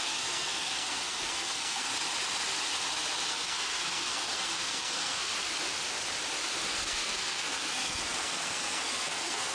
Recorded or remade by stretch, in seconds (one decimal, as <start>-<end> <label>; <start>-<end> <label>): 0.0-1.9 remade; 1.9-3.3 recorded; 3.3-5.3 remade; 5.3-6.7 recorded; 6.7-9.5 remade